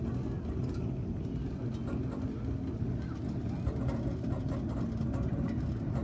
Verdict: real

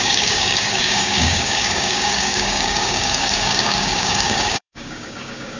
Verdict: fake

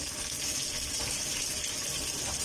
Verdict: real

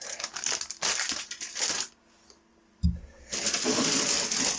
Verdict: real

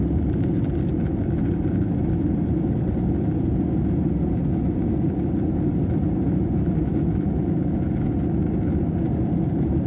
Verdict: real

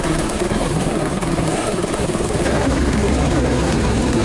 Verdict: fake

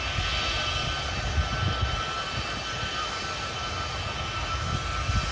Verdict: real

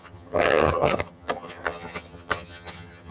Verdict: fake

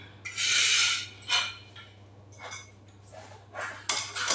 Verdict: real